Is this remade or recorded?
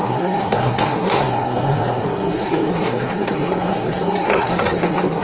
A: remade